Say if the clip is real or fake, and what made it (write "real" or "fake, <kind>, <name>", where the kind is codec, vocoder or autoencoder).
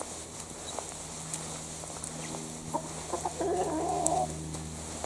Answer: real